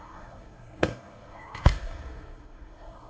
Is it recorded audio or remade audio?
remade